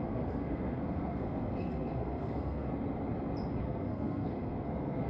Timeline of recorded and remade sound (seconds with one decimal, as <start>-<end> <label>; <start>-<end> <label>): 0.0-2.7 remade; 2.7-3.6 recorded; 3.6-5.1 remade